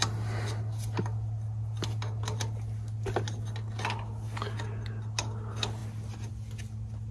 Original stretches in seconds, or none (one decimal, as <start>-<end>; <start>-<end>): 0.0-7.1